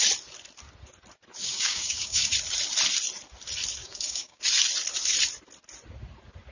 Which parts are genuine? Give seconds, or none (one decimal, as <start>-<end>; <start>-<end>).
0.0-1.4; 2.3-3.8; 4.4-6.5